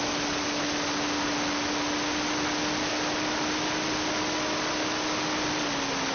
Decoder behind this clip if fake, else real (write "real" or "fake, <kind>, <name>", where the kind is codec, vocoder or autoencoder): real